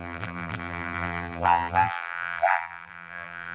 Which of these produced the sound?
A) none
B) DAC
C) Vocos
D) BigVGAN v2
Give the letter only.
D